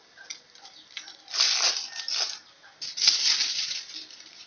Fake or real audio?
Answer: real